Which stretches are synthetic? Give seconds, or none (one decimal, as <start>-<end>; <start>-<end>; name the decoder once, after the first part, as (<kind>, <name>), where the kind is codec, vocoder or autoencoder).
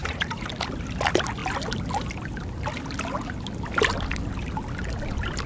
0.0-0.5 (vocoder, Vocos)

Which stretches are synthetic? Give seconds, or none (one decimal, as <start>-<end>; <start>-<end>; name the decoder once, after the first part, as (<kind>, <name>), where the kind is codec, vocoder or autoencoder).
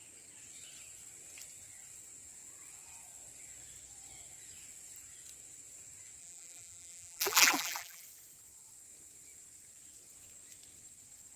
6.2-8.0 (vocoder, BigVGAN v2)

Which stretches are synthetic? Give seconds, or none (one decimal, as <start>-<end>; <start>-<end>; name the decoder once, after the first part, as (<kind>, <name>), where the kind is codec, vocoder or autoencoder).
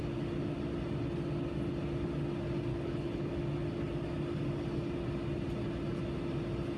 2.7-3.3 (codec, HILCodec)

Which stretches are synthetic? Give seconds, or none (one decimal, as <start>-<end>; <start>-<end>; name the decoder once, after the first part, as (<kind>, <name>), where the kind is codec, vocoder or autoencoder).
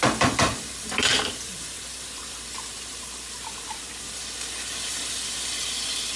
1.1-4.0 (vocoder, BigVGAN v2)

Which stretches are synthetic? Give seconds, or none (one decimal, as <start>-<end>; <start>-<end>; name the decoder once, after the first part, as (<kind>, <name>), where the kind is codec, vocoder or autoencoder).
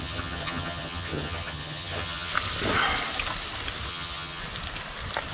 0.0-2.3 (vocoder, HiFi-GAN); 3.9-4.4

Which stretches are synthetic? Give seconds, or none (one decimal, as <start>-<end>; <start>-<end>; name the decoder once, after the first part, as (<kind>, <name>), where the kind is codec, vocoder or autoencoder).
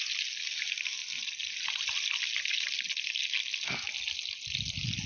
none